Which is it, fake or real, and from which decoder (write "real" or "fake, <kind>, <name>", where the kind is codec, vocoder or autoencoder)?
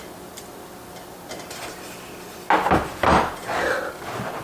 real